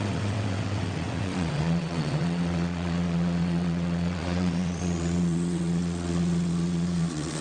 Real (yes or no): no